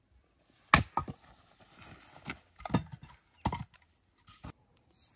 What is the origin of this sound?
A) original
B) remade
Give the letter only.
A